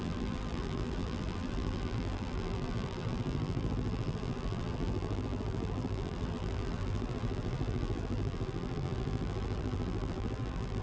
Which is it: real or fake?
fake